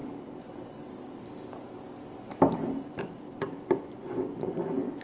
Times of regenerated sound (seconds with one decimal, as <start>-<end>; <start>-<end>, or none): 4.0-4.6